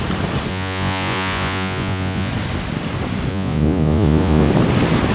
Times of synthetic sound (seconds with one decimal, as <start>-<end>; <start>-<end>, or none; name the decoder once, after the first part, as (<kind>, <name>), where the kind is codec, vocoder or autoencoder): 0.5-2.3 (vocoder, Vocos); 3.3-4.5

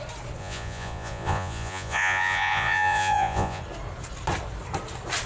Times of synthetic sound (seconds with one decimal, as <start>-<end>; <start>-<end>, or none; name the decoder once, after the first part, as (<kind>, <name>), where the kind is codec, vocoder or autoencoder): 0.4-3.6 (vocoder, Vocos)

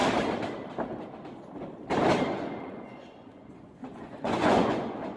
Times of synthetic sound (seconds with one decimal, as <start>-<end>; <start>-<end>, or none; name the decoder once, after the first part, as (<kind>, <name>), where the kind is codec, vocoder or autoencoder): 2.3-5.2 (vocoder, Vocos)

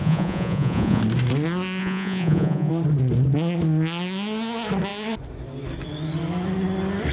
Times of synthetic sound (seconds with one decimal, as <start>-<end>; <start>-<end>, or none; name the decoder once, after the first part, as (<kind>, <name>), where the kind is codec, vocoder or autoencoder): 0.0-1.0 (vocoder, Vocos); 1.8-2.7

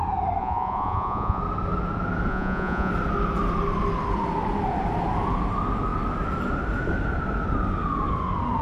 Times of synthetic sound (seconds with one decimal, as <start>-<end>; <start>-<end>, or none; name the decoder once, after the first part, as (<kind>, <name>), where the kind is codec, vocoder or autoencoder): 0.4-1.4 (vocoder, Vocos); 2.3-2.9

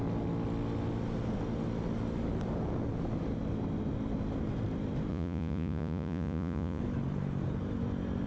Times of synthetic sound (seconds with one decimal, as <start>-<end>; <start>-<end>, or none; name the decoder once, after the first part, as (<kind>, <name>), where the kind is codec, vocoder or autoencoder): 5.1-6.8 (vocoder, Vocos)

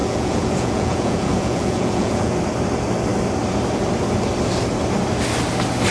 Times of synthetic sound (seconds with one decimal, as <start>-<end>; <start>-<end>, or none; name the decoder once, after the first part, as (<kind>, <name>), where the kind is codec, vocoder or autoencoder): 0.0-2.3 (vocoder, Vocos)